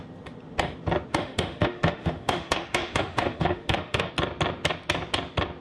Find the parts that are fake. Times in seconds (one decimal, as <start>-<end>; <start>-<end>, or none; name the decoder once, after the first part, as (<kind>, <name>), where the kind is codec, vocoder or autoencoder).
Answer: 1.1-4.1 (autoencoder, DAC-VAE)